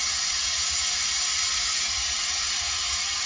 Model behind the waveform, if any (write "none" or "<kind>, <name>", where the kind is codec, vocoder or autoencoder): none